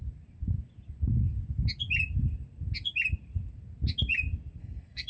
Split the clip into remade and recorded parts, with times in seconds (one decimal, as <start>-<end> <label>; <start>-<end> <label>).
0.0-4.6 recorded; 4.6-5.1 remade